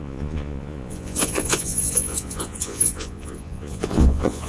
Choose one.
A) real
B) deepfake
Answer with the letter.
B